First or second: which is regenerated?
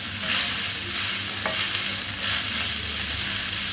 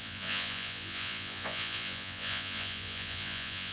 second